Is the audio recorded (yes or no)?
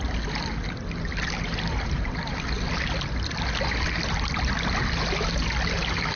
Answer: yes